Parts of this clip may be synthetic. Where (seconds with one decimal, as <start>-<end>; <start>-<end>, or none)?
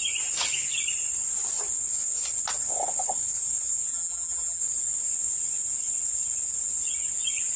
3.9-4.6